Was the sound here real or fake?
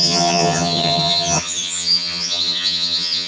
fake